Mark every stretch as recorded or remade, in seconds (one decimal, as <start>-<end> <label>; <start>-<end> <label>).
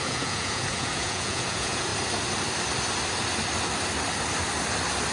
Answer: 0.0-1.9 remade; 1.9-5.1 recorded